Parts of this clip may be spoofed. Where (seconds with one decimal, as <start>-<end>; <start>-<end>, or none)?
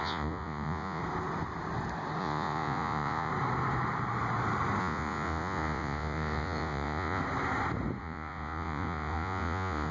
0.0-1.0; 2.2-3.3; 4.8-7.2; 8.0-9.9